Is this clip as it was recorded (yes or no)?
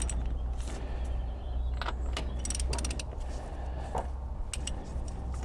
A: yes